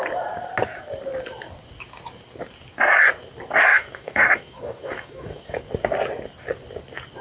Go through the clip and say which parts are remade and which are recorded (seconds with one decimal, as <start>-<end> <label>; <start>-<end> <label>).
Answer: 0.0-3.7 recorded; 3.7-5.6 remade; 5.6-7.2 recorded